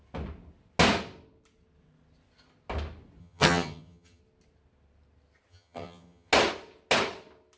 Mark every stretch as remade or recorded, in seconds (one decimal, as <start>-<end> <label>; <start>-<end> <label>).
0.0-3.2 recorded; 3.2-4.2 remade; 4.2-5.5 recorded; 5.5-6.3 remade; 6.3-7.6 recorded

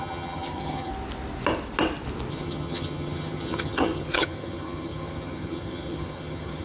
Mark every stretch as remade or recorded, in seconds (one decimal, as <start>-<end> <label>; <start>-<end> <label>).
0.0-0.9 remade; 0.9-2.3 recorded; 2.3-6.6 remade

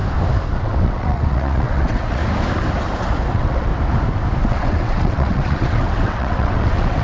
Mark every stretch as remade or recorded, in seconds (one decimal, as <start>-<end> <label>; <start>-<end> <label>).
0.0-0.6 recorded; 0.6-2.2 remade; 2.2-3.3 recorded; 3.3-3.7 remade; 3.7-4.4 recorded; 4.4-7.0 remade

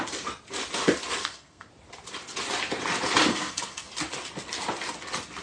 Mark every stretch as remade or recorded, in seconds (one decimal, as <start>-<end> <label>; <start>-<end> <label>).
0.0-1.2 recorded; 1.2-1.7 remade; 1.7-3.3 recorded; 3.3-3.9 remade; 3.9-5.4 recorded

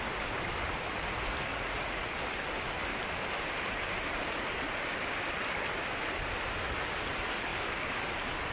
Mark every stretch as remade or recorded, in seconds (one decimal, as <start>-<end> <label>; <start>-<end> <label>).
0.0-1.5 recorded; 1.5-2.1 remade; 2.1-8.5 recorded